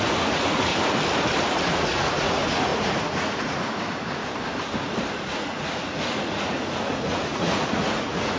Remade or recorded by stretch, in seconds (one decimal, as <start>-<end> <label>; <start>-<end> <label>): 0.0-0.7 remade; 0.7-1.7 recorded; 1.7-4.2 remade; 4.2-5.1 recorded; 5.1-8.4 remade